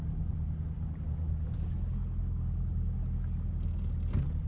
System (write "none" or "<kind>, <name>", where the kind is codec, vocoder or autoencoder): none